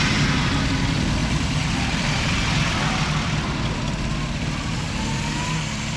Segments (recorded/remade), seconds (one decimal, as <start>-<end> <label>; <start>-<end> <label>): 0.0-1.2 recorded; 1.2-4.8 remade; 4.8-6.0 recorded